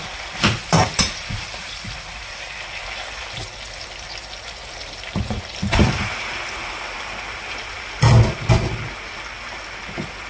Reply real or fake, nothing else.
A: real